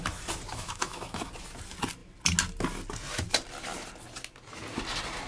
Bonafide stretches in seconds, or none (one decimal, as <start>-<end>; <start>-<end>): 0.0-0.5; 1.3-5.3